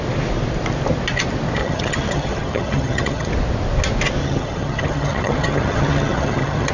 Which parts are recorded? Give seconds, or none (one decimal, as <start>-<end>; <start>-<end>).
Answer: 0.0-1.6; 3.3-4.2